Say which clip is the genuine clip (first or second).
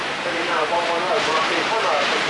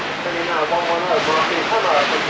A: second